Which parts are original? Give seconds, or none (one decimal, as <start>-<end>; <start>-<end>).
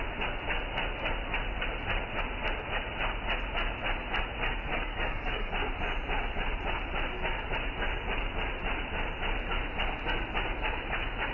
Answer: 0.0-4.7; 5.5-11.3